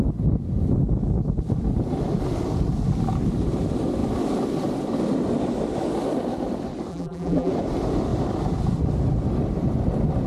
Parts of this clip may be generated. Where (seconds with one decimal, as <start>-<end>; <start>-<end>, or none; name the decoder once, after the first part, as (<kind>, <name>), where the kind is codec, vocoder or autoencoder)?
6.9-7.5 (vocoder, BigVGAN v2)

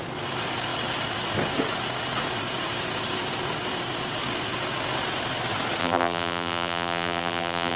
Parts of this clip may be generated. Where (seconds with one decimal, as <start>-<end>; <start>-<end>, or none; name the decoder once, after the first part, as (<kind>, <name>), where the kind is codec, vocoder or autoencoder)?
5.8-7.8 (vocoder, BigVGAN v2)

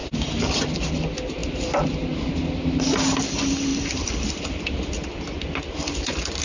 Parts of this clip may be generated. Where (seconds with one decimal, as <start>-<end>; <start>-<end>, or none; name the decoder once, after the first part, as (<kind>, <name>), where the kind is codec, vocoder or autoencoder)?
0.0-0.9 (vocoder, BigVGAN v2); 3.7-4.4

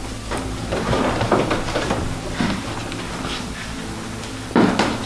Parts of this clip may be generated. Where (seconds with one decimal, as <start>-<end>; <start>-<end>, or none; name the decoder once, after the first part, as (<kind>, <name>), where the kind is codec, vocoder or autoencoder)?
none

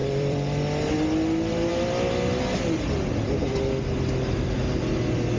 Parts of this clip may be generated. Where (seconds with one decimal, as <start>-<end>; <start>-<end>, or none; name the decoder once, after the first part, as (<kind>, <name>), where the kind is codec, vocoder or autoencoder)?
0.0-0.6 (vocoder, BigVGAN v2)